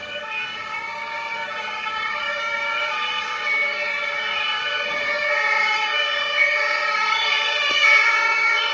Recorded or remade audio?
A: remade